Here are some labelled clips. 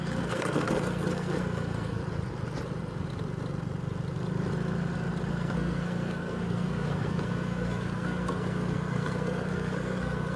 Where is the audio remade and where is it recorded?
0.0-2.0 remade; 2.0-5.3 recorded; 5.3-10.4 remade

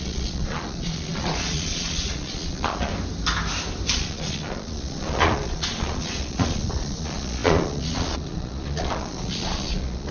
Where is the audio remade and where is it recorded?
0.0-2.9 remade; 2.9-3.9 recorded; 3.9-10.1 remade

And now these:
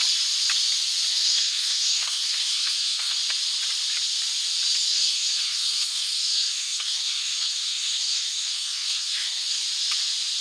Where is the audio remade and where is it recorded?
0.0-1.1 recorded; 1.1-3.2 remade; 3.2-4.9 recorded; 4.9-9.6 remade; 9.6-10.4 recorded

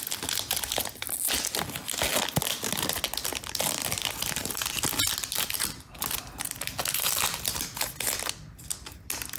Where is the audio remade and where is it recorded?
0.0-9.4 recorded